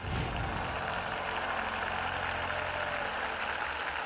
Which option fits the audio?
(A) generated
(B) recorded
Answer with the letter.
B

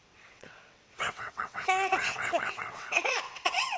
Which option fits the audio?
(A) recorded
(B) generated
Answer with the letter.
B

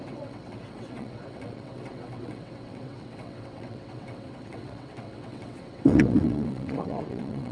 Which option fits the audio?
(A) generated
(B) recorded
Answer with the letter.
A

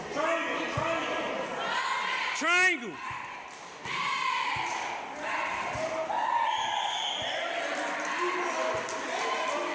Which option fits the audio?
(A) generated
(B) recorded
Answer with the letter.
B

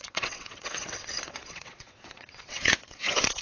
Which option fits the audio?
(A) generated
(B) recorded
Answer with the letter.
A